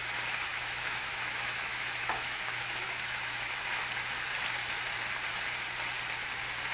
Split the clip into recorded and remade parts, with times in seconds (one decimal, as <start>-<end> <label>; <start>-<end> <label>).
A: 0.0-0.5 recorded; 0.5-3.8 remade; 3.8-6.7 recorded